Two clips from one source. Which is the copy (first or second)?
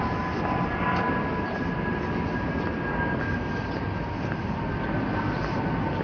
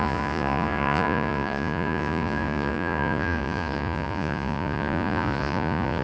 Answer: second